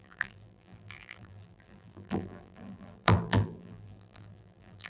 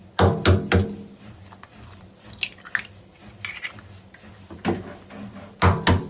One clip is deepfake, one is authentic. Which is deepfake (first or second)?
first